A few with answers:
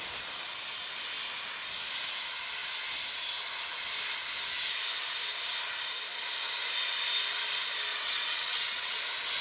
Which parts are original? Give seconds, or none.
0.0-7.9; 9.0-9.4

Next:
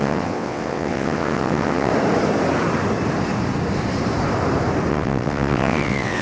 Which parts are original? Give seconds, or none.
1.9-4.9

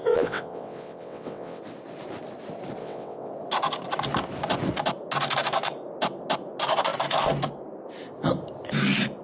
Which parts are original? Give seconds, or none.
1.6-2.8; 3.3-9.2

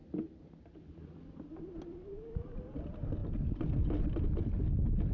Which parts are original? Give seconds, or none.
0.0-5.1